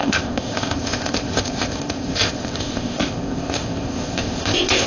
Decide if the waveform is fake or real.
fake